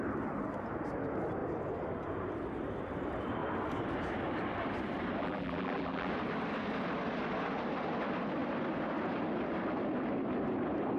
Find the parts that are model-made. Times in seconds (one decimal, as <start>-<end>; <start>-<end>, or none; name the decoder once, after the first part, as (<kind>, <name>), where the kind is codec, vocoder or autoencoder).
5.2-6.1 (vocoder, BigVGAN v2)